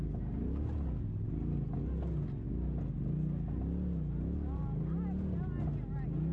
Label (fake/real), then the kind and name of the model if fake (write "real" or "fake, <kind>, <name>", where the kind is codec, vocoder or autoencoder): real